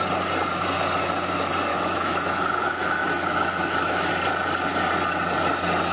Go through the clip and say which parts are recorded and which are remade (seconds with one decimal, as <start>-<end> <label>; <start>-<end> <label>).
0.0-1.7 recorded; 1.7-4.1 remade; 4.1-5.9 recorded

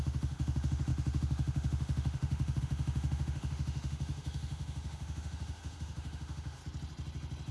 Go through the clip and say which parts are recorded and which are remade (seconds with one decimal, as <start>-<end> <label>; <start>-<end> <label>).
0.0-6.6 remade; 6.6-7.5 recorded

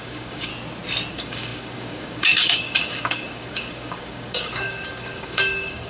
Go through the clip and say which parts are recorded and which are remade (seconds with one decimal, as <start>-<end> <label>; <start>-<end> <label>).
0.0-0.5 remade; 0.5-1.1 recorded; 1.1-5.9 remade

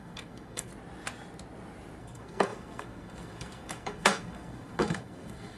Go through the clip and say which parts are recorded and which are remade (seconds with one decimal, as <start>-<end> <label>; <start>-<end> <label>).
0.0-0.7 remade; 0.7-2.0 recorded; 2.0-5.6 remade

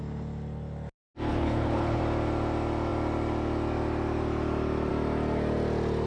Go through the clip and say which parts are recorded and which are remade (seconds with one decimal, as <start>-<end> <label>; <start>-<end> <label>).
0.0-1.3 recorded; 1.3-2.0 remade; 2.0-6.1 recorded

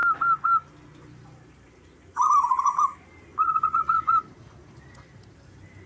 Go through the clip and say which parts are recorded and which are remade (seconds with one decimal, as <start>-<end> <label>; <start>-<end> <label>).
0.0-3.3 recorded; 3.3-4.2 remade; 4.2-5.9 recorded

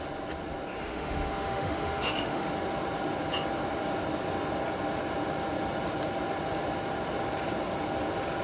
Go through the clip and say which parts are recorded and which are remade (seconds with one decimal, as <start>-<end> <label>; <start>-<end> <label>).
0.0-0.8 recorded; 0.8-2.5 remade; 2.5-8.4 recorded